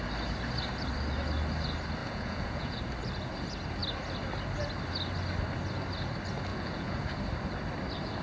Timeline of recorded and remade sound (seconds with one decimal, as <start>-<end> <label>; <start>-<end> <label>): 0.0-2.0 recorded; 2.0-2.8 remade; 2.8-6.5 recorded; 6.5-7.2 remade; 7.2-8.2 recorded